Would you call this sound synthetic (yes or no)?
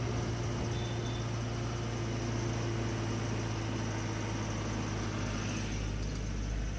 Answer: no